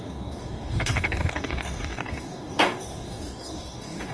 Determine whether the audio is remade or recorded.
remade